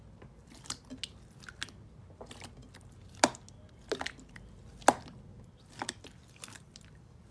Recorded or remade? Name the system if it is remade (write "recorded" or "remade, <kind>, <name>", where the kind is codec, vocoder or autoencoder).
recorded